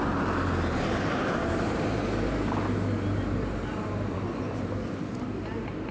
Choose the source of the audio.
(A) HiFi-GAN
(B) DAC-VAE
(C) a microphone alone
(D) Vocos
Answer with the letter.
C